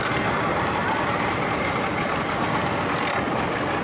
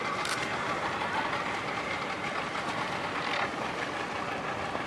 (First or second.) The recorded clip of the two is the first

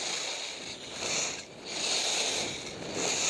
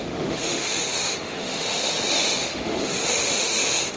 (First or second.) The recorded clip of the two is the first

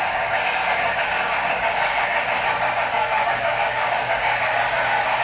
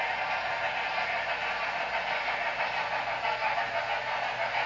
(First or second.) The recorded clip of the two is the second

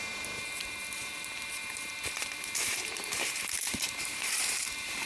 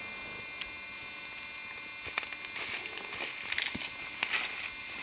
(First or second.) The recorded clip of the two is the second